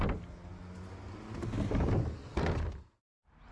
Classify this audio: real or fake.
real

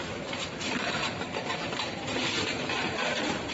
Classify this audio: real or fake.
fake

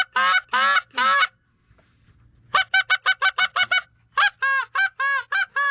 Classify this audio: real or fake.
real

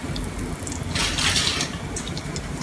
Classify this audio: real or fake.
real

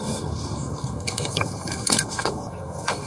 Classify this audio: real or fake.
fake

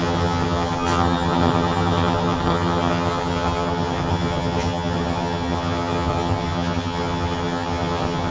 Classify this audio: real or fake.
fake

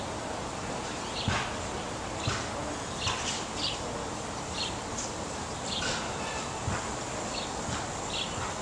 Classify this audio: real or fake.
real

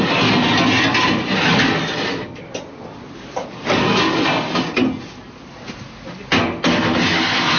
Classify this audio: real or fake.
real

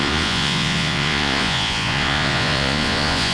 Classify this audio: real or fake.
fake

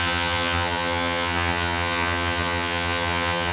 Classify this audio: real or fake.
fake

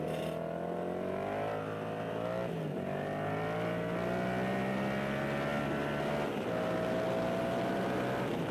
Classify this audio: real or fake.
real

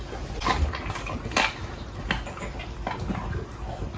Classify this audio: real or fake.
real